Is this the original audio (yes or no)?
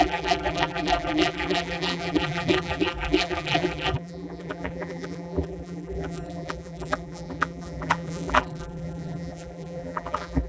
no